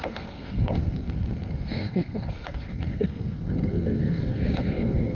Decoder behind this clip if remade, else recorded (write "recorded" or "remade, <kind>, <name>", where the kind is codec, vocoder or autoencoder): remade, codec, SNAC